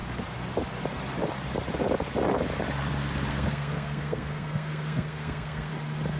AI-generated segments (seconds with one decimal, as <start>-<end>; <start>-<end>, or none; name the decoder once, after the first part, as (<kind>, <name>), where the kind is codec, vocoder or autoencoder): 3.3-5.7 (codec, SNAC)